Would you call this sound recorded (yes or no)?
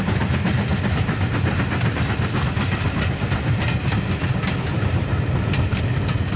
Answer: yes